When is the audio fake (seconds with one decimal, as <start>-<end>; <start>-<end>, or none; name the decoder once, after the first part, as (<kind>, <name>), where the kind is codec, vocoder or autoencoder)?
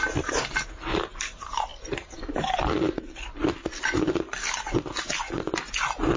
none